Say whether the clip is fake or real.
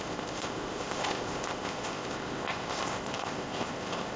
fake